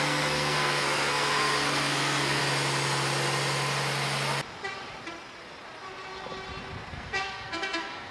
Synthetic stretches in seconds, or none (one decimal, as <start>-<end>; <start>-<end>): 0.0-2.4; 6.9-8.1